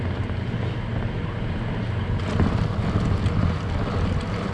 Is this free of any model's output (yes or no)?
yes